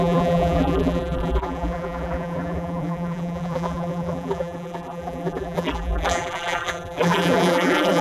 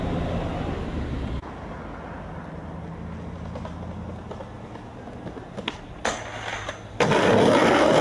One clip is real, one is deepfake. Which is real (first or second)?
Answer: second